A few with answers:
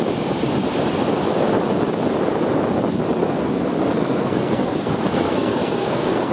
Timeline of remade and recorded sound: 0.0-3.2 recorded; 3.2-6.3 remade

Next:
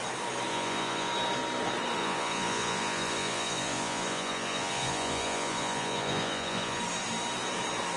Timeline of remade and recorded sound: 0.0-0.5 recorded; 0.5-1.1 remade; 1.1-2.0 recorded; 2.0-6.8 remade; 6.8-8.0 recorded

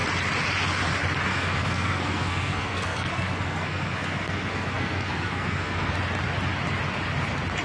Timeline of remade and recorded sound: 0.0-1.3 recorded; 1.3-5.9 remade; 5.9-7.6 recorded

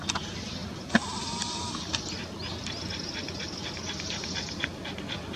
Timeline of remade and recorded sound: 0.0-5.4 recorded

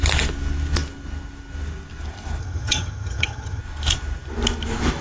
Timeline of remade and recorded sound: 0.0-2.4 recorded; 2.4-3.6 remade; 3.6-5.0 recorded

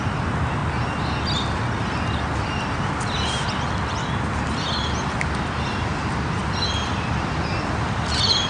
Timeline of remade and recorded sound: 0.0-8.5 recorded